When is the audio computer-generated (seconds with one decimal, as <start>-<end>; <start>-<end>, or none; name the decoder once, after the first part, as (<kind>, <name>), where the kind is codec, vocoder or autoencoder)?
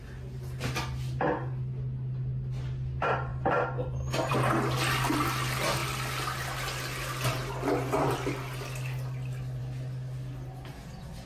none